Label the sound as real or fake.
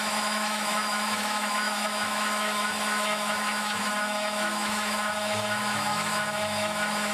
fake